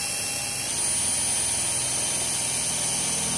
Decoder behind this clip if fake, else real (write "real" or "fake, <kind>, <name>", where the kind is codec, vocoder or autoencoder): real